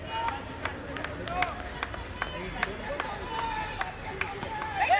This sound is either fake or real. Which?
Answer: real